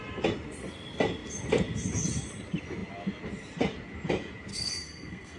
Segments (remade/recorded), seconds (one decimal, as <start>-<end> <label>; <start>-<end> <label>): 0.0-4.5 recorded; 4.5-5.4 remade